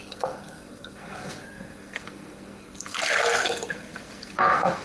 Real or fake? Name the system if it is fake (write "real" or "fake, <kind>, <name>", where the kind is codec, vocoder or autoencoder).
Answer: fake, codec, SNAC